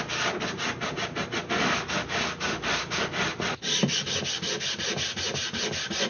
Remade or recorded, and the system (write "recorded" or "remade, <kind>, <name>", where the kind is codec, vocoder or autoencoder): recorded